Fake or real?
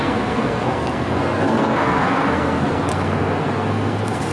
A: fake